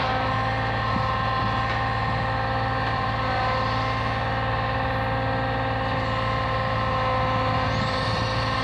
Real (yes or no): no